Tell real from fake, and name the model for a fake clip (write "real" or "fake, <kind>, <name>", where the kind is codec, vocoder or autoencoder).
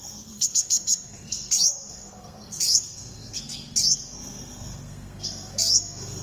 fake, codec, SNAC